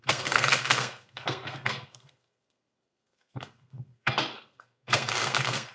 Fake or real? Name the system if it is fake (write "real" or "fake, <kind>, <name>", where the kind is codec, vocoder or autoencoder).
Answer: fake, codec, SNAC